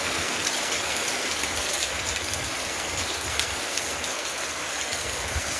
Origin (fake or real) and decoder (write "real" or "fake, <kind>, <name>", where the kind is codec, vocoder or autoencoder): fake, codec, SNAC